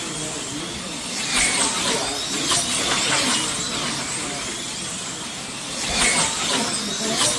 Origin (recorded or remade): recorded